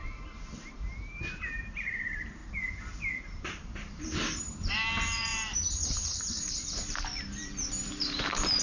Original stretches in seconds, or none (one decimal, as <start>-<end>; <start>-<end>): 0.0-0.7; 2.4-3.2